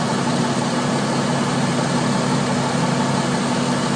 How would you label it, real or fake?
real